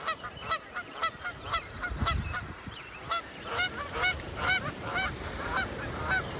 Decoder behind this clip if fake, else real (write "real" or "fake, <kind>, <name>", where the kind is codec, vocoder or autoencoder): fake, vocoder, BigVGAN v2